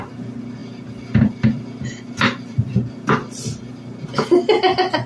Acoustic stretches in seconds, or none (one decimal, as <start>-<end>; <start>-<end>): 0.0-0.6; 3.7-5.1